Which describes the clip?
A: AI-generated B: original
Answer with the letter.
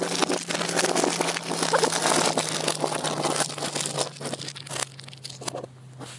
B